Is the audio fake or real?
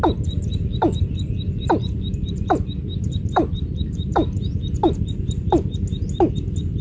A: real